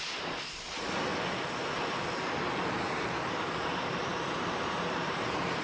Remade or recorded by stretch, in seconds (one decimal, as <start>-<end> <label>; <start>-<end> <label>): 0.0-1.1 remade; 1.1-2.7 recorded; 2.7-5.6 remade